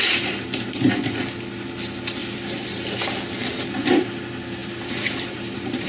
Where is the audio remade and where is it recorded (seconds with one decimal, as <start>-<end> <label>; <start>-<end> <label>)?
0.0-2.2 recorded; 2.2-3.1 remade; 3.1-4.6 recorded; 4.6-5.9 remade

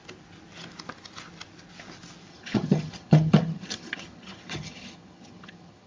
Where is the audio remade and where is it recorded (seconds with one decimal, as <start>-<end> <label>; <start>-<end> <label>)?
0.0-2.3 recorded; 2.3-5.9 remade

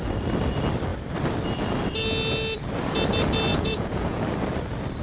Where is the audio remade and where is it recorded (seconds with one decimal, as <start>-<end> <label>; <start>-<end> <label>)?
0.0-3.5 recorded; 3.5-4.2 remade; 4.2-5.0 recorded

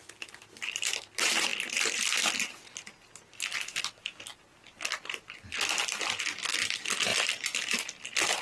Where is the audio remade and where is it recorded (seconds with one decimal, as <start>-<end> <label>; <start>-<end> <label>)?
0.0-8.4 recorded

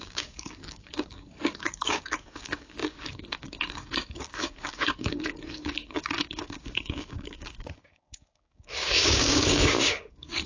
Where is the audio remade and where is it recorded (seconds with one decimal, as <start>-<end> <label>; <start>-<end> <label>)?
0.0-10.5 remade

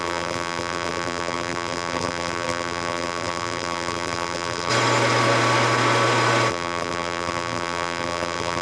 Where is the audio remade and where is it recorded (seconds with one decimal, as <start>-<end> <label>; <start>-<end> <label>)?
0.0-4.7 remade; 4.7-6.5 recorded; 6.5-8.6 remade

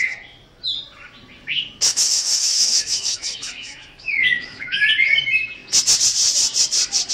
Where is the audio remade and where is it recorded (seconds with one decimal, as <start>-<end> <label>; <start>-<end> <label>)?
0.0-1.9 recorded; 1.9-4.8 remade; 4.8-7.1 recorded